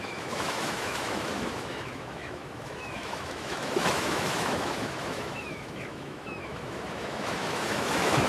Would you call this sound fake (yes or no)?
yes